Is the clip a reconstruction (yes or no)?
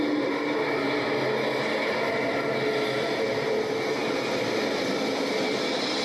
no